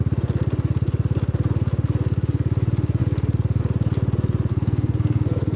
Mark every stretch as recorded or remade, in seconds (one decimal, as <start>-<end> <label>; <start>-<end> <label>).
0.0-4.5 recorded; 4.5-5.6 remade